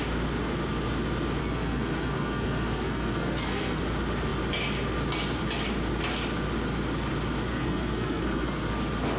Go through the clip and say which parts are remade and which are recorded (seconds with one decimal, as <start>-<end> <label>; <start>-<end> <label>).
0.0-1.4 recorded; 1.4-3.8 remade; 3.8-7.5 recorded; 7.5-8.7 remade; 8.7-9.2 recorded